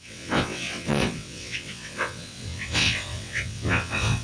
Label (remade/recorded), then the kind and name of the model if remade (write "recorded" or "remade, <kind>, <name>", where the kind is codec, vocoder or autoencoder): remade, vocoder, WaveNeXt